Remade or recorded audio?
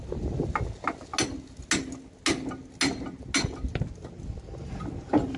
recorded